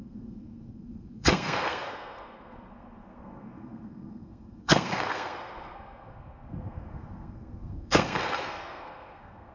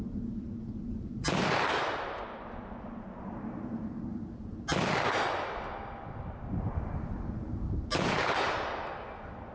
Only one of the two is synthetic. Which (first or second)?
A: first